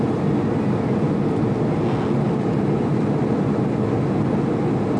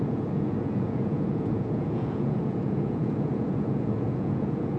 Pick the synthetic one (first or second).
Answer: second